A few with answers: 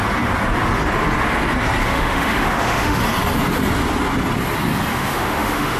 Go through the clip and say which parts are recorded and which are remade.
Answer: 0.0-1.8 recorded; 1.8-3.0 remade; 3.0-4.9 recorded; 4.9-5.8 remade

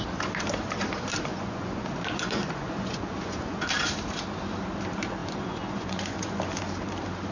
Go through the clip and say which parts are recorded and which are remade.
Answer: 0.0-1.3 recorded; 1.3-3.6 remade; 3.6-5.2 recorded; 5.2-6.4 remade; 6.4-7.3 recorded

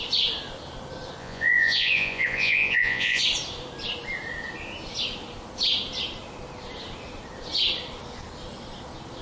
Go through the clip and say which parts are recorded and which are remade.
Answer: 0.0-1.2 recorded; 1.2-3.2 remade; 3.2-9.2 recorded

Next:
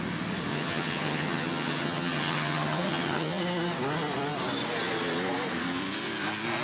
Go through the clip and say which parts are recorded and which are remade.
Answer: 0.0-0.5 recorded; 0.5-3.4 remade; 3.4-6.6 recorded

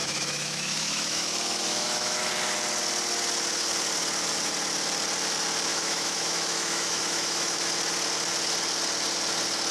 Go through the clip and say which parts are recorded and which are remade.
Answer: 0.0-2.3 remade; 2.3-5.7 recorded; 5.7-7.7 remade; 7.7-9.7 recorded